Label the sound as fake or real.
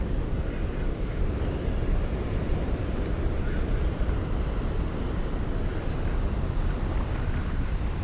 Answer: real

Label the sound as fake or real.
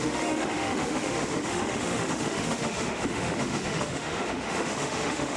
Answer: fake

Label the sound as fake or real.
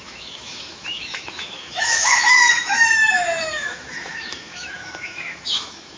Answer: fake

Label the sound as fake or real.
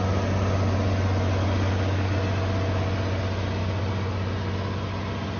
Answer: real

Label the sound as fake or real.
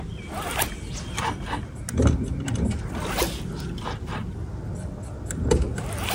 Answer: real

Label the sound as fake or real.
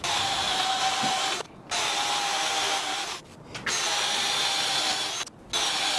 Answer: real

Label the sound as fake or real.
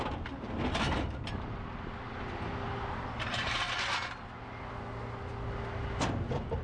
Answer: real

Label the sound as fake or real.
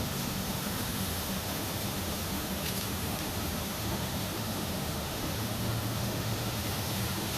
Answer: fake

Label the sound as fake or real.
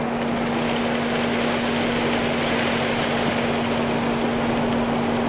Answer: real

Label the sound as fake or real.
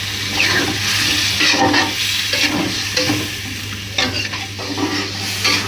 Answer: real